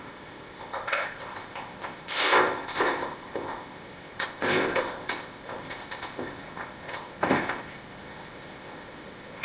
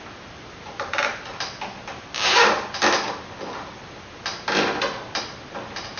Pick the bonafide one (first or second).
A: second